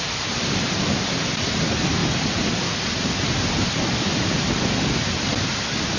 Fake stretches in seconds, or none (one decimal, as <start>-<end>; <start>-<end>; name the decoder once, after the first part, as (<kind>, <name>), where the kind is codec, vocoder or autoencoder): none